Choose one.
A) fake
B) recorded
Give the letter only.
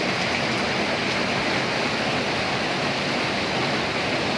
B